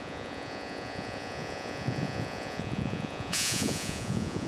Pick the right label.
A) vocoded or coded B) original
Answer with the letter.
A